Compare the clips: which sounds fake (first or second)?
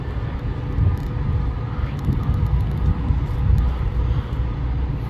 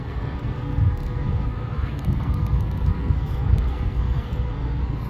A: second